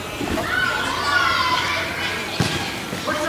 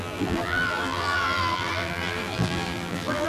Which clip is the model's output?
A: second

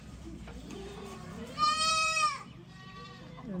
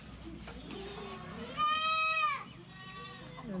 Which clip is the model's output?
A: first